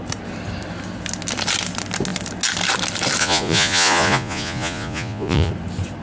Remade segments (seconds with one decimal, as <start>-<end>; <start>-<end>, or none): 3.2-5.5